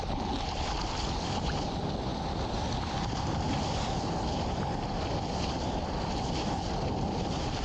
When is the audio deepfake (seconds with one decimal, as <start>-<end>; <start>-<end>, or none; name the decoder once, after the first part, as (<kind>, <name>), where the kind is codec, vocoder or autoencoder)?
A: none